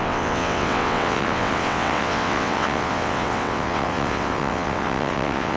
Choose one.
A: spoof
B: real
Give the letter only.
A